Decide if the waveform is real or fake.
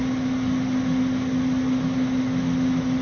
real